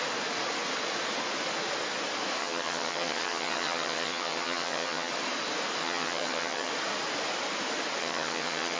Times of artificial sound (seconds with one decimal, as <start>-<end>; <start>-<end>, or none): 2.4-5.1; 5.8-6.7; 8.0-8.8